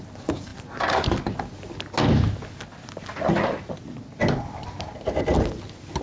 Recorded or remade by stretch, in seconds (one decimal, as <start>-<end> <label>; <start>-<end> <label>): 0.0-6.0 recorded